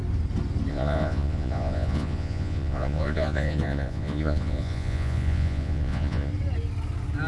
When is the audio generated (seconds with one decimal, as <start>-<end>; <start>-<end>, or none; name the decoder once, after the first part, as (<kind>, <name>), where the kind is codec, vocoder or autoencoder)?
0.7-6.3 (vocoder, Vocos)